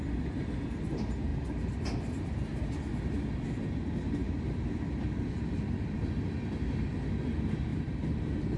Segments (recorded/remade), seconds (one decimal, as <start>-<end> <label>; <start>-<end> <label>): 0.0-8.6 recorded